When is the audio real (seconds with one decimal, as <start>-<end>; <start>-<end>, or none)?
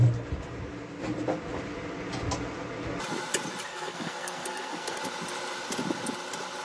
0.0-3.7; 5.0-6.6